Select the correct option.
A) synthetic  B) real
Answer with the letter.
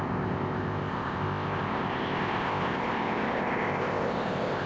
A